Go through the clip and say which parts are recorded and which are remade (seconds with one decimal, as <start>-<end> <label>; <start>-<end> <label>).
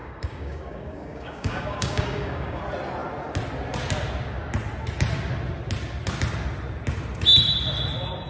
0.0-2.6 remade; 2.6-8.3 recorded